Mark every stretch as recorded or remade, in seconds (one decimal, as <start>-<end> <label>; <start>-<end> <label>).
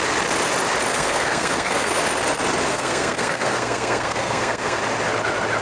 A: 0.0-0.9 recorded; 0.9-1.9 remade; 1.9-2.7 recorded; 2.7-4.8 remade; 4.8-5.6 recorded